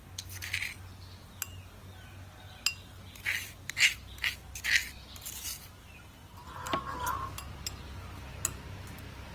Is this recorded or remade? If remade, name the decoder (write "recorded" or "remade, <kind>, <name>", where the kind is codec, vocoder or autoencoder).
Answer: recorded